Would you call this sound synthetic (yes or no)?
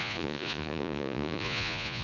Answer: yes